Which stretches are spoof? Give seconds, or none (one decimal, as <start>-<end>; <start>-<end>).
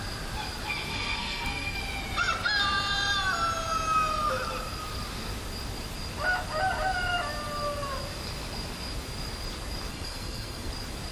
0.9-1.8; 9.9-10.7